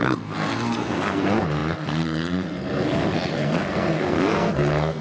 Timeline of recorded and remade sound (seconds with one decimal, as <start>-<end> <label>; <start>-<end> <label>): 0.0-5.0 remade